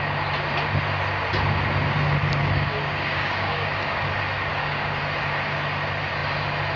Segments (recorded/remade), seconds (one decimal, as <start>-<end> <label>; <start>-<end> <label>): 0.0-2.4 recorded; 2.4-4.0 remade; 4.0-4.5 recorded; 4.5-5.0 remade; 5.0-6.8 recorded